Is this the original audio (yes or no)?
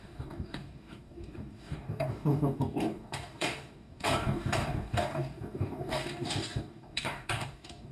no